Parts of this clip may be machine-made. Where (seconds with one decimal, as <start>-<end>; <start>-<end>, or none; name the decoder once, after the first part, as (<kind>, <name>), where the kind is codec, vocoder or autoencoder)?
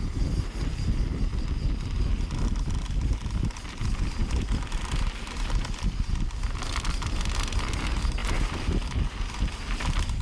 8.2-8.7 (vocoder, BigVGAN v2)